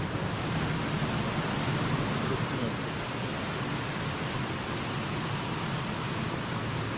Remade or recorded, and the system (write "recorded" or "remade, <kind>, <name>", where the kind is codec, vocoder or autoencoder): recorded